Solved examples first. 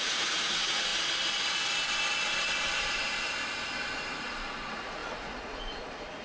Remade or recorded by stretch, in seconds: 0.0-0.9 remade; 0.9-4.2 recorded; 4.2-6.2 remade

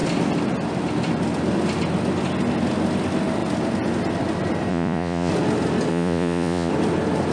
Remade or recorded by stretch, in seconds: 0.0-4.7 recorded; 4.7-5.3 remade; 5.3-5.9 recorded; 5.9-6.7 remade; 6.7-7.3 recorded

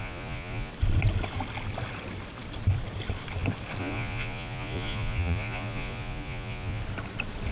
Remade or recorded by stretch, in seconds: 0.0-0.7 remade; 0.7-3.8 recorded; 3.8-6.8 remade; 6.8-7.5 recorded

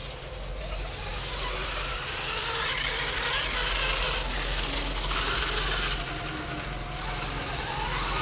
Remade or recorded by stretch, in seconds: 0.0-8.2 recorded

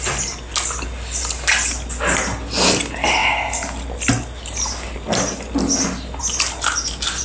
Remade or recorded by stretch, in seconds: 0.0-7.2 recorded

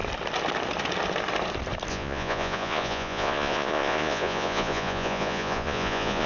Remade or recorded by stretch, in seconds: 0.0-1.9 recorded; 1.9-6.3 remade

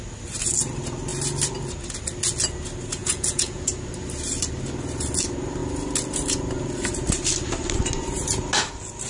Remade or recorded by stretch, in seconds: 0.0-3.0 recorded; 3.0-3.7 remade; 3.7-9.1 recorded

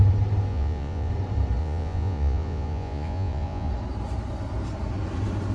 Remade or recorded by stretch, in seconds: 0.0-0.5 recorded; 0.5-1.1 remade; 1.1-1.6 recorded; 1.6-3.7 remade; 3.7-5.5 recorded